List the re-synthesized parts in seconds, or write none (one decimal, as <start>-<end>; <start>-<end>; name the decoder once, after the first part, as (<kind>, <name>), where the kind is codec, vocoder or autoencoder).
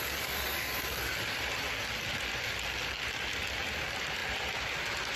none